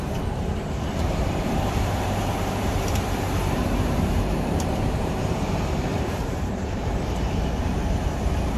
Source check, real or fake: fake